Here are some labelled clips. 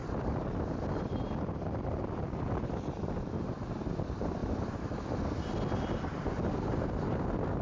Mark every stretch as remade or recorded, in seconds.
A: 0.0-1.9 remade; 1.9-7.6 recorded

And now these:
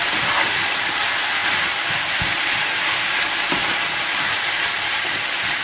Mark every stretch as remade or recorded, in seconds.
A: 0.0-1.4 remade; 1.4-3.8 recorded; 3.8-5.6 remade

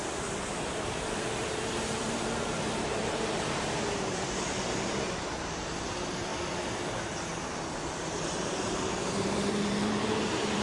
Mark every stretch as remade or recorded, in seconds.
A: 0.0-0.6 recorded; 0.6-6.3 remade; 6.3-7.8 recorded; 7.8-10.6 remade